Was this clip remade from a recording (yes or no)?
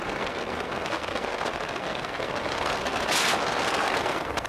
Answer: yes